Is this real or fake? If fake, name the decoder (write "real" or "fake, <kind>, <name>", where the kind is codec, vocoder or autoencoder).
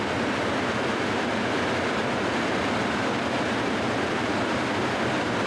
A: fake, vocoder, BigVGAN v2